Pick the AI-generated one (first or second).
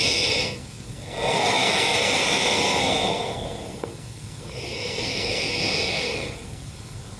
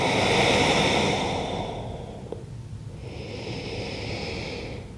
first